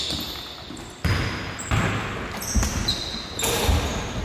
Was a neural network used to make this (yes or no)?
no